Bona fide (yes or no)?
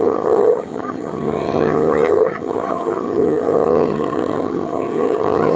no